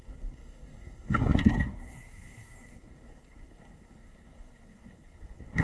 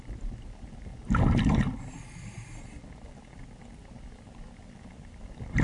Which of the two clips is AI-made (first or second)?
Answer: first